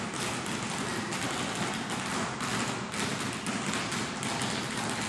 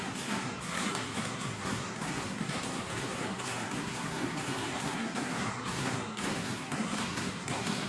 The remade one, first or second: second